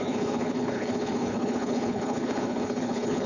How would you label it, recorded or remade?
remade